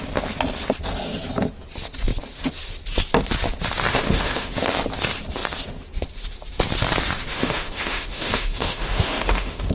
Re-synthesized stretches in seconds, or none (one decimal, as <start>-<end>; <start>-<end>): 3.9-4.5; 7.3-9.7

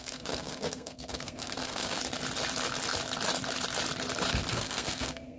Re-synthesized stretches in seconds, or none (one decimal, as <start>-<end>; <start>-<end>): 0.0-2.0; 4.5-5.4

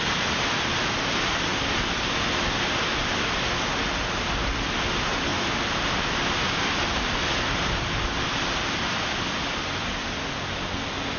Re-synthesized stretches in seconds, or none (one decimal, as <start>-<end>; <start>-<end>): 5.3-9.0

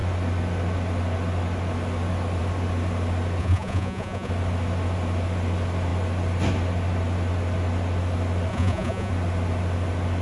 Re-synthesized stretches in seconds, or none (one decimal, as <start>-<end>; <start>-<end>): 3.4-4.3; 8.5-9.1

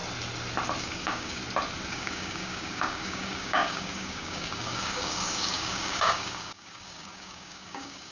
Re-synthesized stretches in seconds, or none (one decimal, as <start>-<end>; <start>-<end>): 0.8-1.4; 1.9-8.1

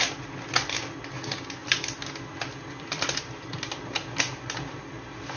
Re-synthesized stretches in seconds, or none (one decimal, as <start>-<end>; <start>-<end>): 1.6-4.8

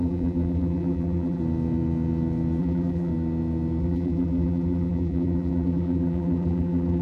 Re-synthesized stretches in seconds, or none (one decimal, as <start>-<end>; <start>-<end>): 0.0-1.4; 2.6-3.1; 3.8-7.0